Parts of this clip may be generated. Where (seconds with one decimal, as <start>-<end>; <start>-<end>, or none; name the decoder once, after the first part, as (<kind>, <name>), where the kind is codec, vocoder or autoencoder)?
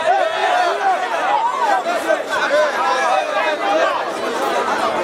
0.4-3.4 (vocoder, BigVGAN v2)